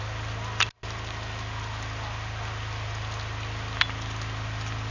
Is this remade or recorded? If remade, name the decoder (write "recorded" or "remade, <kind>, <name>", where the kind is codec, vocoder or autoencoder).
recorded